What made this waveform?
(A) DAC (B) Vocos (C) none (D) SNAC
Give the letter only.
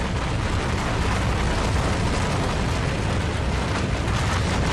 C